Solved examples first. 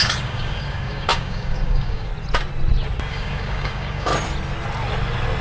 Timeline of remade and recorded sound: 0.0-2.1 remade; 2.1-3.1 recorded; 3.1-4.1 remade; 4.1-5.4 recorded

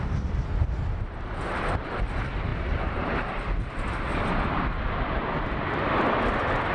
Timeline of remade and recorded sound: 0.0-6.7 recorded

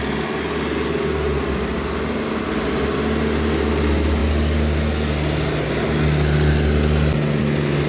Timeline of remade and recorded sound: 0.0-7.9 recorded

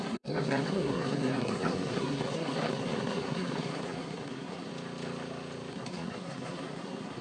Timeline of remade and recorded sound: 0.0-4.7 remade; 4.7-5.7 recorded; 5.7-7.2 remade

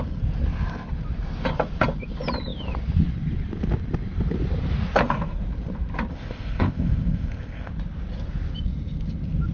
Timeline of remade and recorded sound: 0.0-6.1 recorded; 6.1-7.7 remade; 7.7-9.5 recorded

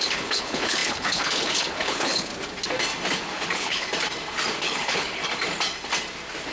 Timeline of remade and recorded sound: 0.0-2.3 remade; 2.3-3.2 recorded; 3.2-3.9 remade; 3.9-4.6 recorded; 4.6-5.2 remade; 5.2-6.5 recorded

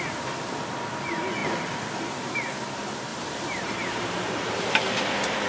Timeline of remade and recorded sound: 0.0-3.1 recorded; 3.1-4.7 remade; 4.7-5.5 recorded